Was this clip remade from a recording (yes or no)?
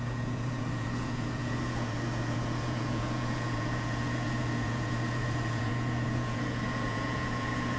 yes